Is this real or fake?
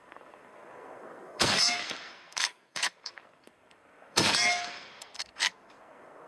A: fake